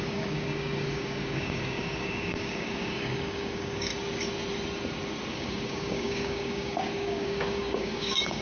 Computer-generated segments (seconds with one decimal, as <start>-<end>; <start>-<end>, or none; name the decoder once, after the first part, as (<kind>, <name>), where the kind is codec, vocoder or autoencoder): 0.0-3.9 (codec, DAC); 5.3-8.4